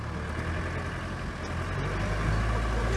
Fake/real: real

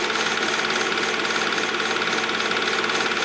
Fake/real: real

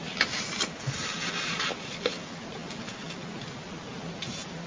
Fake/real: real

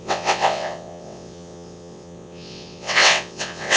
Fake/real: fake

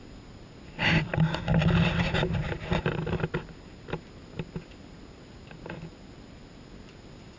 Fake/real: real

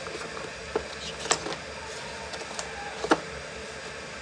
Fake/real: real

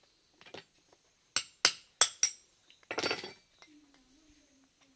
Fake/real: real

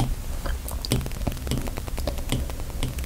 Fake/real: real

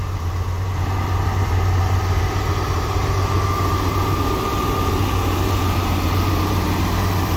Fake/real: fake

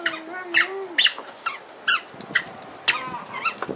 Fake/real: real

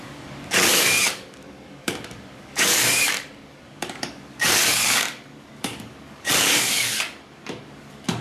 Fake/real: fake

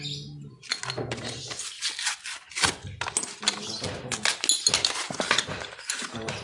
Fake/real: real